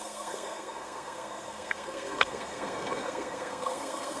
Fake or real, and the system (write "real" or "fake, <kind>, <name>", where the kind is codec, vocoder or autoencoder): fake, codec, SNAC